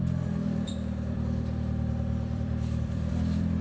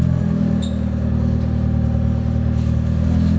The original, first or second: second